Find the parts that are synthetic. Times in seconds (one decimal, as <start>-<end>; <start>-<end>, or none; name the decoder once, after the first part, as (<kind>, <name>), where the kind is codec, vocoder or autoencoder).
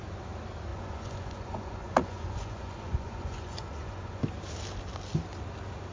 0.7-4.2 (vocoder, Vocos)